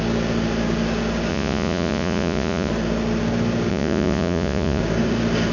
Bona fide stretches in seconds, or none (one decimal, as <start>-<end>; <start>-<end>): 0.0-1.3; 2.7-3.7; 4.8-5.5